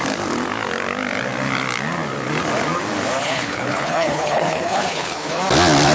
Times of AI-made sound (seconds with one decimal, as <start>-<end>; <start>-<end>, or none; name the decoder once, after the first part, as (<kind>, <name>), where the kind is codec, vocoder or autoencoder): 3.2-5.4 (codec, HILCodec)